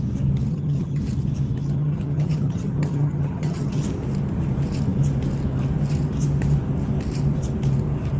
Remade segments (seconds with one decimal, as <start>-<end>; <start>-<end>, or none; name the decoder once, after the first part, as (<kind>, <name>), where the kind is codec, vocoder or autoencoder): 0.5-1.0 (vocoder, HiFi-GAN); 1.6-3.8